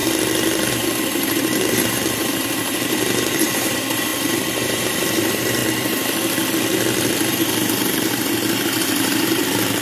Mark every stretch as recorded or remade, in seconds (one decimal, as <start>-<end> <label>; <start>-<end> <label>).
0.0-0.7 recorded; 0.7-5.6 remade; 5.6-7.3 recorded; 7.3-9.8 remade